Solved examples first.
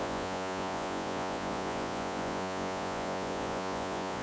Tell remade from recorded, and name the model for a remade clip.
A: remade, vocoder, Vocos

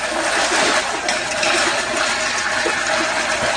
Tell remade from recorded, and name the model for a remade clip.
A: recorded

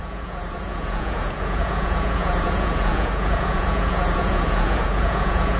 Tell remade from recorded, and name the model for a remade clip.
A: remade, vocoder, Vocos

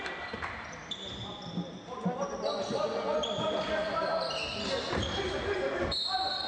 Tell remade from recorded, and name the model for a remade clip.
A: recorded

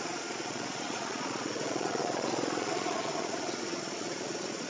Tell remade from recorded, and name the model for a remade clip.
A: remade, vocoder, Vocos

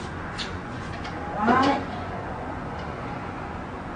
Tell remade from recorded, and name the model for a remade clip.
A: remade, vocoder, Vocos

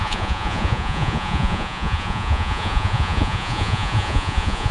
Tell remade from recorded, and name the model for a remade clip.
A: remade, vocoder, Vocos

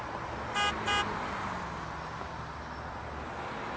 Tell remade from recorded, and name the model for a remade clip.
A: recorded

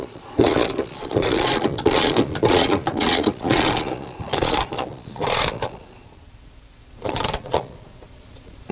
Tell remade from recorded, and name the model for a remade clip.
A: remade, vocoder, Vocos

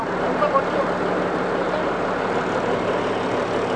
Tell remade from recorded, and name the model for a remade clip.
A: recorded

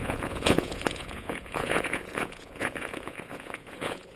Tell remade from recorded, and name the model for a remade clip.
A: remade, vocoder, Vocos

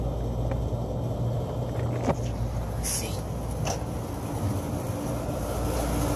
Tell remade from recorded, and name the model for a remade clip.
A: recorded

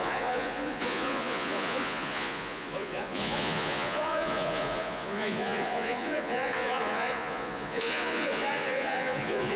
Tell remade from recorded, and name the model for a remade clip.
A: remade, vocoder, Vocos